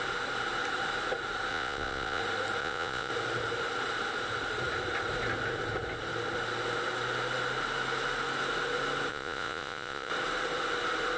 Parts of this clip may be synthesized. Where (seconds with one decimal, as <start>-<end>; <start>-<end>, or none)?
1.5-2.2; 2.6-3.1; 9.1-10.1

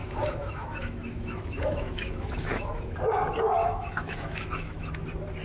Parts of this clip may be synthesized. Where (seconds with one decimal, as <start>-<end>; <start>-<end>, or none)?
0.0-3.1; 3.6-5.0

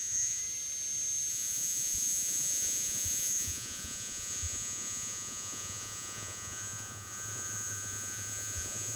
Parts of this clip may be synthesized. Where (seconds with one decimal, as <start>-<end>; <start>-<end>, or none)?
0.0-0.4; 1.3-9.0